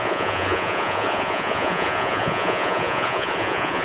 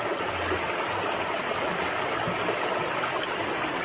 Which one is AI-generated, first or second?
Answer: first